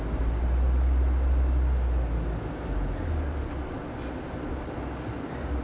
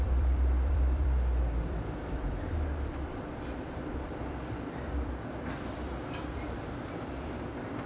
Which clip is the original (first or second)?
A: first